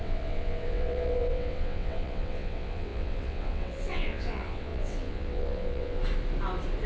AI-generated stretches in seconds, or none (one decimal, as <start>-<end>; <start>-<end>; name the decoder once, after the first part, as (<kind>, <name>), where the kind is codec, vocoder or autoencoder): 0.0-6.0 (vocoder, WaveNeXt)